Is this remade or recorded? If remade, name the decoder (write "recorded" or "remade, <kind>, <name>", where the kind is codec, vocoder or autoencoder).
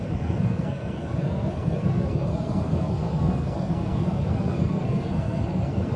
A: remade, codec, SNAC